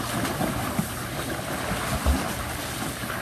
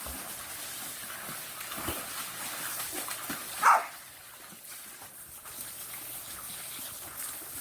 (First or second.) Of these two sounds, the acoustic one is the first